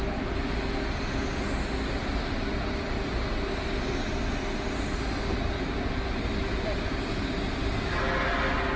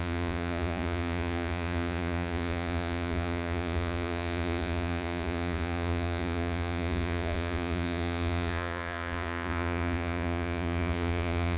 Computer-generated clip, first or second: second